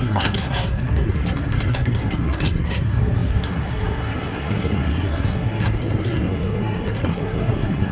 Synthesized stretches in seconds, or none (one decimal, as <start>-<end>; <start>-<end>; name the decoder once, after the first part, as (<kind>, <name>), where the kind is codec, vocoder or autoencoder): 0.0-7.9 (codec, SNAC)